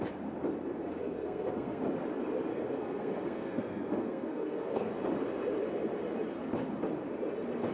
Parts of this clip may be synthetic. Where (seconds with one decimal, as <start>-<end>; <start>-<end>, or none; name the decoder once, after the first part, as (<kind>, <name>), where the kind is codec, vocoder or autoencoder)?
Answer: 1.0-1.8 (codec, SNAC); 2.5-4.9